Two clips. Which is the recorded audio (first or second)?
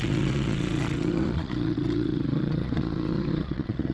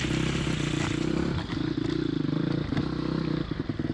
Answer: second